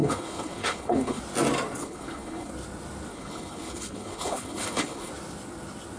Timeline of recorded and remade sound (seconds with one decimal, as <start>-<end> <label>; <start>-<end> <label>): 0.0-1.2 remade; 1.2-1.8 recorded; 1.8-2.5 remade; 2.5-3.1 recorded; 3.1-5.1 remade; 5.1-6.0 recorded